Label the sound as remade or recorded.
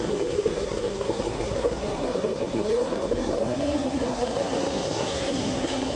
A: remade